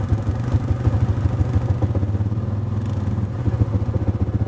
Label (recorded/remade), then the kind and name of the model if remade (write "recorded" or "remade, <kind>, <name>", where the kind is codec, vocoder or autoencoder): recorded